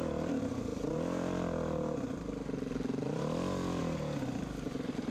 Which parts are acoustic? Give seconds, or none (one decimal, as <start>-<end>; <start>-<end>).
0.0-5.1